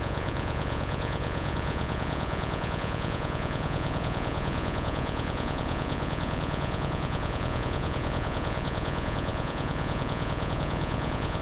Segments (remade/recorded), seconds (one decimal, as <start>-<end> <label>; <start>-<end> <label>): 0.0-11.4 remade